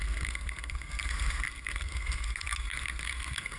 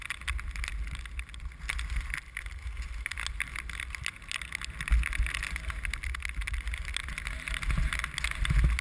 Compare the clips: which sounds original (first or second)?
second